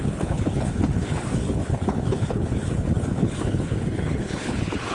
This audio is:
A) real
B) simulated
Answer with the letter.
B